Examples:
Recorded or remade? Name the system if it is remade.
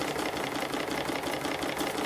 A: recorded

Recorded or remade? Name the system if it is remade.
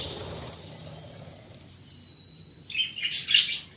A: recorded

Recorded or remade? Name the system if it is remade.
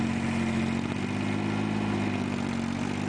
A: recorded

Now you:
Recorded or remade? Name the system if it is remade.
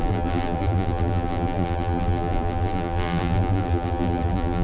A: remade, vocoder, BigVGAN v2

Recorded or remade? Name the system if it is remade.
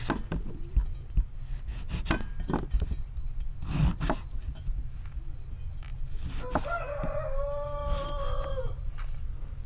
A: recorded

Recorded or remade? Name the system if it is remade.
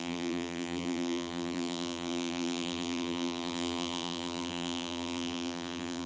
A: remade, vocoder, BigVGAN v2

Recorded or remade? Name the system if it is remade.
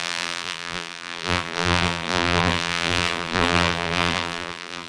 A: remade, vocoder, BigVGAN v2